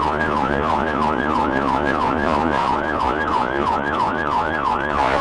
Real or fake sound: fake